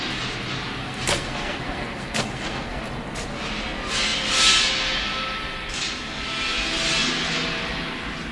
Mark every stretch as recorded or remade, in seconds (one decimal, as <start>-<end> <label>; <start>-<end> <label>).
0.0-0.8 recorded; 0.8-2.8 remade; 2.8-8.3 recorded